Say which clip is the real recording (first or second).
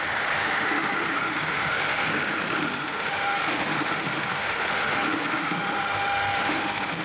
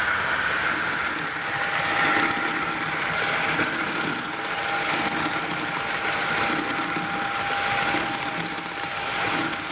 second